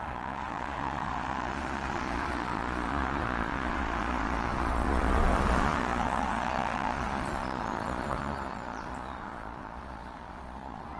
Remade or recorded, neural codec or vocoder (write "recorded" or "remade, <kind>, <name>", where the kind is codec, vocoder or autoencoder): remade, vocoder, Vocos